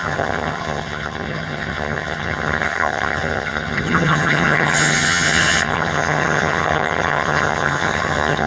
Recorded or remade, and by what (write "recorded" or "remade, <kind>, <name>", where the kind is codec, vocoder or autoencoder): remade, vocoder, HiFi-GAN